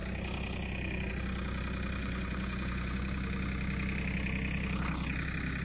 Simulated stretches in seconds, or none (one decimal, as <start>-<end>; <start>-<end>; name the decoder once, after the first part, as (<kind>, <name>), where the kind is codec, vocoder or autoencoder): 2.0-3.0 (vocoder, Vocos)